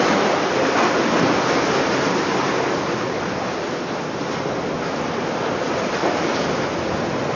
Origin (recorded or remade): recorded